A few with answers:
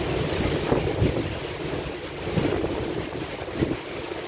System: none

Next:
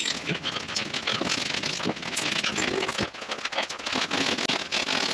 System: none